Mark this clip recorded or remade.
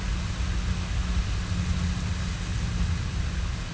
recorded